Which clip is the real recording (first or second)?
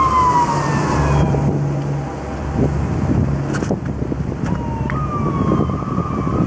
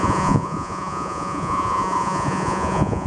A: first